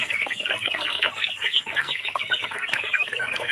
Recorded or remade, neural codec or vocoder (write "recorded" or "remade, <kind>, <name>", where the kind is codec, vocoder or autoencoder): remade, codec, SNAC